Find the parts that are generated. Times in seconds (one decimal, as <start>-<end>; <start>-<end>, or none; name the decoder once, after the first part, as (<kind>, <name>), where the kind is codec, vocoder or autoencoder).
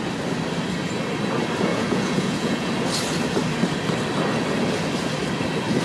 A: 1.7-2.7 (vocoder, Vocos)